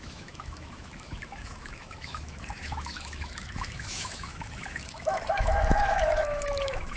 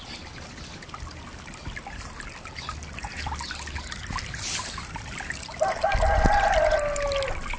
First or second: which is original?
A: second